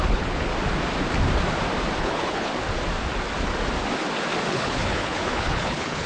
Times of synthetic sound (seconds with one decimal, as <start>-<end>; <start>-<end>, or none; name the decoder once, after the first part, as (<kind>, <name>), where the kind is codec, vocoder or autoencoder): 0.0-0.5 (codec, HILCodec); 2.0-2.5; 4.5-6.1